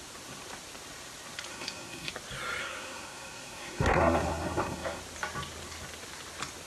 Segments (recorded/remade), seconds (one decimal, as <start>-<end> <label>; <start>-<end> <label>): 0.0-1.5 recorded; 1.5-2.1 remade; 2.1-2.6 recorded; 2.6-5.0 remade; 5.0-6.7 recorded